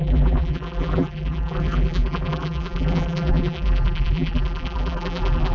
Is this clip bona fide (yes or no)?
no